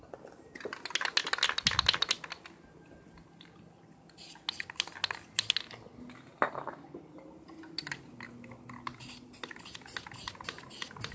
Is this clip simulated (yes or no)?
no